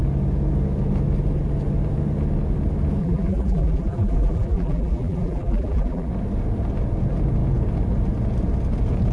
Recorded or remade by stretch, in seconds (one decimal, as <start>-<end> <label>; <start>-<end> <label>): 0.0-3.0 recorded; 3.0-6.1 remade; 6.1-9.1 recorded